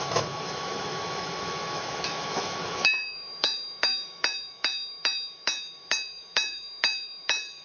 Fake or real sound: fake